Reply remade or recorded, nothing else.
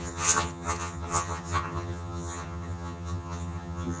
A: remade